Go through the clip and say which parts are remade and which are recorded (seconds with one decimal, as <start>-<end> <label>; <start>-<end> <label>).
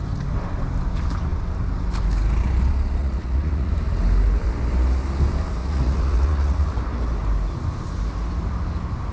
0.0-3.0 recorded; 3.0-3.7 remade; 3.7-5.6 recorded; 5.6-6.7 remade; 6.7-9.1 recorded